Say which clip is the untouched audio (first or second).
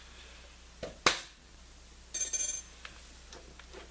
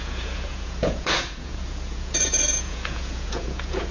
first